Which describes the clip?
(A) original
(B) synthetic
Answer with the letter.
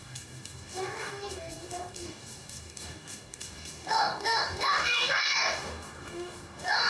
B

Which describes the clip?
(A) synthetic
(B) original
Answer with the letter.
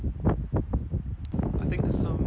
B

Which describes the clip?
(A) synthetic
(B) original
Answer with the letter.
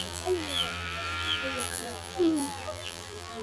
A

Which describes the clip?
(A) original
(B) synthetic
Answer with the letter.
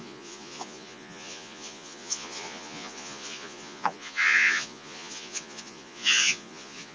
B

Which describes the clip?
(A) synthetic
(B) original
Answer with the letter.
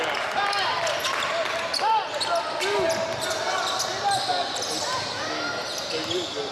B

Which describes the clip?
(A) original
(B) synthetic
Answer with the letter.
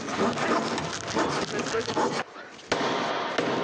A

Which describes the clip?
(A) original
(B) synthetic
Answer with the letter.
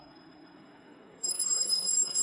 B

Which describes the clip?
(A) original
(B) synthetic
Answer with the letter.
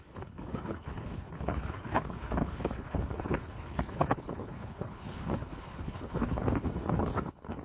B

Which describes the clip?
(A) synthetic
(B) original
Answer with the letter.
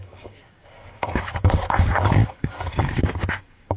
A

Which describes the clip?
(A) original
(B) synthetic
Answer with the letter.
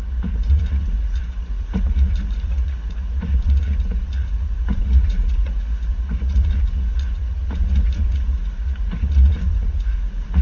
B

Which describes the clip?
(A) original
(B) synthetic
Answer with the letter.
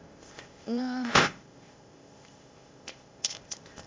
B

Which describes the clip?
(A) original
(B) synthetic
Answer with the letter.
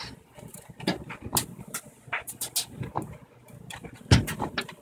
A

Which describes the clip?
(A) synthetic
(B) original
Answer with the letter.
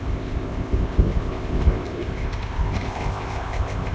A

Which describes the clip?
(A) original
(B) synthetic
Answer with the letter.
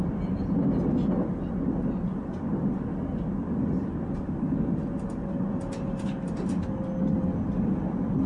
A